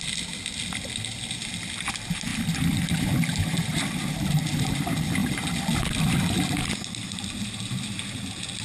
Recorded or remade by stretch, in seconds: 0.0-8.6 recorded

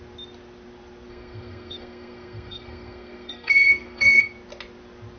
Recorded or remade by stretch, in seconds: 0.0-1.1 recorded; 1.1-4.2 remade; 4.2-5.2 recorded

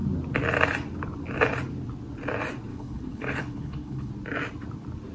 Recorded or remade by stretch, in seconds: 0.0-2.7 recorded; 2.7-4.1 remade; 4.1-5.1 recorded